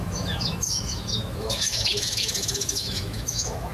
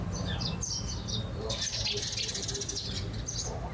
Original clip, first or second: second